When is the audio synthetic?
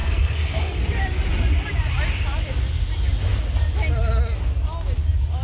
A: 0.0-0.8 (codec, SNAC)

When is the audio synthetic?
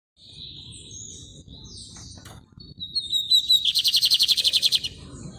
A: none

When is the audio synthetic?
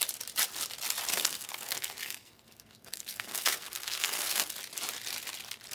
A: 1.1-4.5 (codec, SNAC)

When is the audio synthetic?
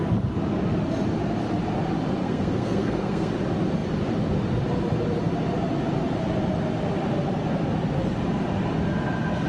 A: 2.2-3.3 (codec, SNAC)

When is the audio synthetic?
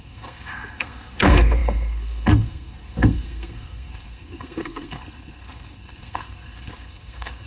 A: 0.0-7.5 (codec, SNAC)